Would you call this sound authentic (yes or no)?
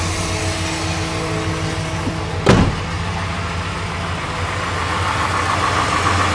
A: yes